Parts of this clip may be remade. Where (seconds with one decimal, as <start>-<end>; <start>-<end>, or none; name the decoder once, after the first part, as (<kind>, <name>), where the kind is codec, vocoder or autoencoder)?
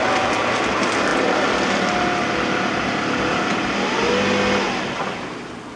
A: none